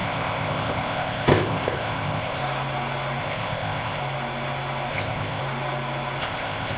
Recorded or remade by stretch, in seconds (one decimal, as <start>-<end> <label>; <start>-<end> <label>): 0.0-2.4 remade; 2.4-3.2 recorded; 3.2-4.0 remade; 4.0-4.9 recorded; 4.9-5.4 remade; 5.4-6.2 recorded; 6.2-6.8 remade